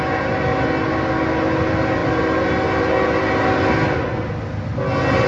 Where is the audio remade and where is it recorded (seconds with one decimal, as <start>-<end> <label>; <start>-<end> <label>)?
0.0-5.3 recorded